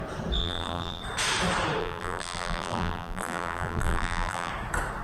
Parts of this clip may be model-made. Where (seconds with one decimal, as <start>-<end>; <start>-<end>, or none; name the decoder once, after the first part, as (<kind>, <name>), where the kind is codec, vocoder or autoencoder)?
0.4-1.0 (vocoder, BigVGAN v2); 1.8-4.5